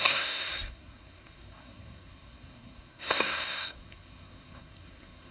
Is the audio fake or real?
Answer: fake